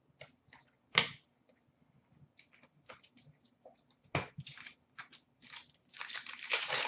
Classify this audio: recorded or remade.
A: recorded